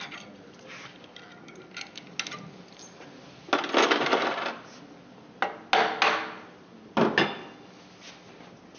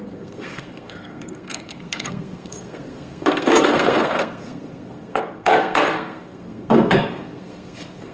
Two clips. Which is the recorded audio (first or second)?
first